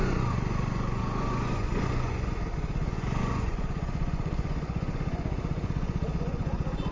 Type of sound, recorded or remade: remade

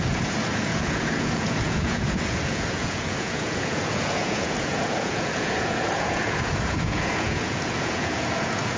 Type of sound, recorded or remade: remade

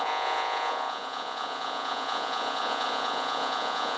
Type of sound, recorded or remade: remade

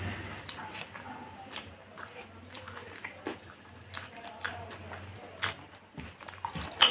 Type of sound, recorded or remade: recorded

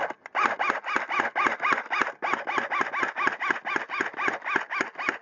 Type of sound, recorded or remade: recorded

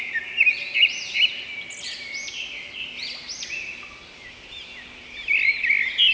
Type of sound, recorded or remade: recorded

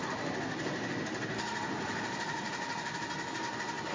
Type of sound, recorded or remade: recorded